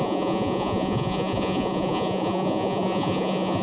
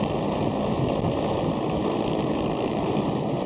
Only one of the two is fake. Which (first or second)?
first